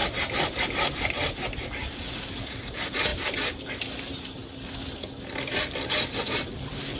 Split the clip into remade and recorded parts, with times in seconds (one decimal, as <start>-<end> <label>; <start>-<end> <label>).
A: 0.0-2.7 recorded; 2.7-4.4 remade; 4.4-6.2 recorded; 6.2-7.0 remade